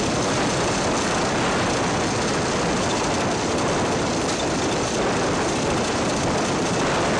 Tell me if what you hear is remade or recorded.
recorded